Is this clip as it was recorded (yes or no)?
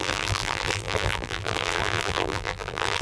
no